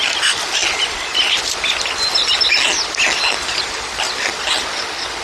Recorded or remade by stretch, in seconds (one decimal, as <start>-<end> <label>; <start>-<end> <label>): 0.0-5.2 recorded